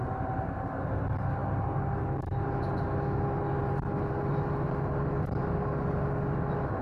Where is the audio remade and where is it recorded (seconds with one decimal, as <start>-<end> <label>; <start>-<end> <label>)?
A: 0.0-6.8 recorded